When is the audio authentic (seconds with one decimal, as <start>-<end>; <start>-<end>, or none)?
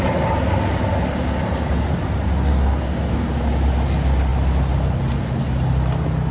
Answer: 0.0-2.5; 3.3-6.3